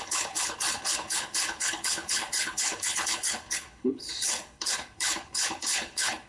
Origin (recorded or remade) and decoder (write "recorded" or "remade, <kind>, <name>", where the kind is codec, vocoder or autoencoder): remade, codec, HILCodec